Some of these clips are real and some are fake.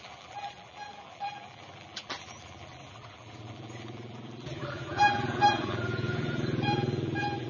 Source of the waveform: fake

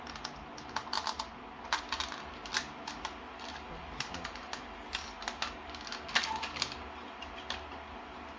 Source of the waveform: real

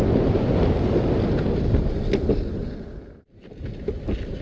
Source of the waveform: real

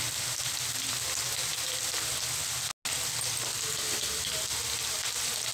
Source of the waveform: real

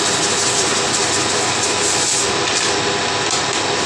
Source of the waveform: real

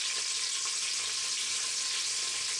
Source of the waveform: real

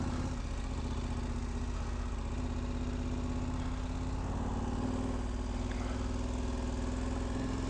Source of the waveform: real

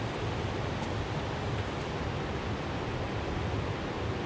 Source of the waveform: real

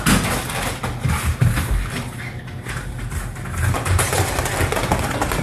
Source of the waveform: real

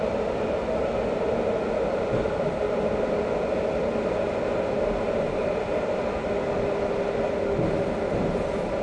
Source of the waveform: real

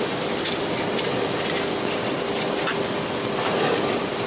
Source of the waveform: real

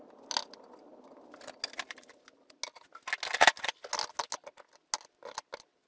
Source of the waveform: real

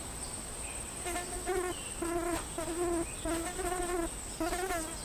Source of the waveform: real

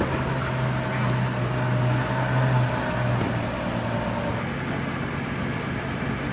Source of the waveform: real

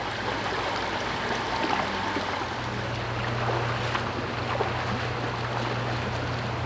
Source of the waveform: real